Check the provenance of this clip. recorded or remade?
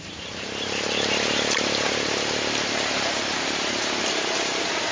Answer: remade